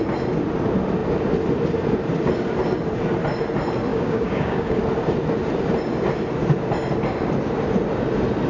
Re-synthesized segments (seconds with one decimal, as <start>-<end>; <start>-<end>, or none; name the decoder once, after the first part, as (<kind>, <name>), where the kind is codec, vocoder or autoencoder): 3.9-4.8 (codec, DAC)